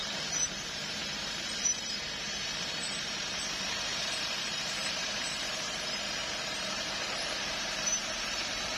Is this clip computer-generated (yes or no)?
yes